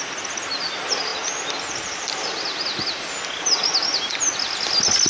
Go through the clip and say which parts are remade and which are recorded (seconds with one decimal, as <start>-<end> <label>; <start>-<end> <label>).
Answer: 0.0-5.1 recorded